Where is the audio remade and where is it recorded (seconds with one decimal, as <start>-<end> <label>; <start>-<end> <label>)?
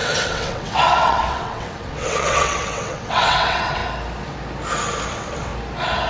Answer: 0.0-3.8 remade; 3.8-5.1 recorded; 5.1-5.5 remade; 5.5-6.1 recorded